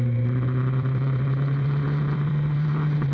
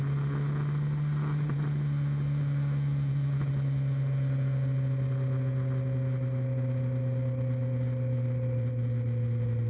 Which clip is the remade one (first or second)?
first